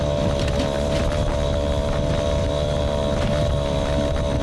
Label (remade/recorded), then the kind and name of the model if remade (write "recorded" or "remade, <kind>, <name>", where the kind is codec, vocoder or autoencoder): recorded